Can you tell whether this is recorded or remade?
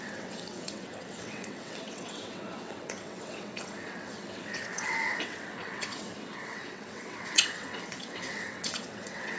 remade